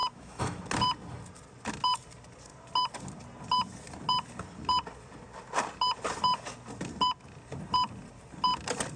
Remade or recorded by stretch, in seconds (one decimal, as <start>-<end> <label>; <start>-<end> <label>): 0.0-0.6 remade; 0.6-9.0 recorded